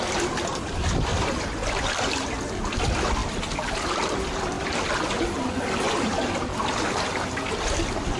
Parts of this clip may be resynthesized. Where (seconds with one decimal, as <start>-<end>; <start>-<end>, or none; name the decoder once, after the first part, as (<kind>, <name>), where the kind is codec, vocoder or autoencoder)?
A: none